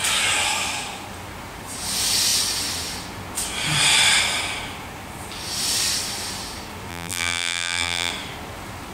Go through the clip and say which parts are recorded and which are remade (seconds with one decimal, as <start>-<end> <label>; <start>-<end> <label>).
0.0-6.9 recorded; 6.9-8.1 remade; 8.1-8.9 recorded